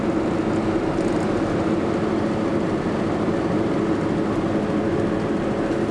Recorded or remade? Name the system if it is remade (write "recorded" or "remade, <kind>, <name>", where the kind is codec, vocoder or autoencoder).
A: recorded